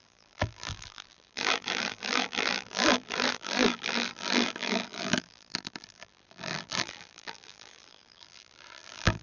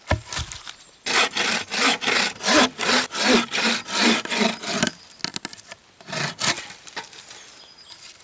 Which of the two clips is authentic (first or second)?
second